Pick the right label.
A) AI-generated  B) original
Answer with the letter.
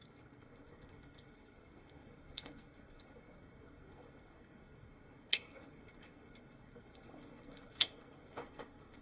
A